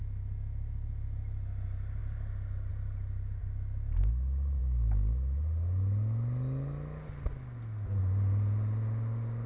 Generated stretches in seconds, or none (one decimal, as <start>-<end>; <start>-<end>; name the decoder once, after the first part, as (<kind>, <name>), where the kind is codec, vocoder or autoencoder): none